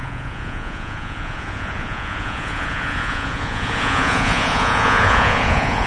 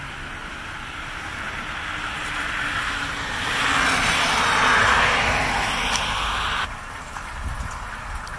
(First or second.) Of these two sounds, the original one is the second